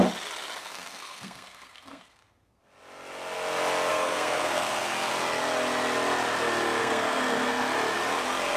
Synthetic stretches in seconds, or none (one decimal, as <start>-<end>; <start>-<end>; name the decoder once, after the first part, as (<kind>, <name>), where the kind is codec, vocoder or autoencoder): 0.6-2.6 (codec, SNAC); 3.9-5.1; 6.8-7.6